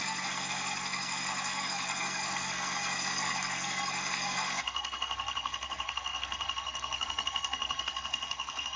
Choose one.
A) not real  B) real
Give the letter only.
A